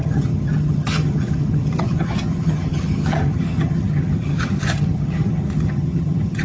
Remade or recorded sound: remade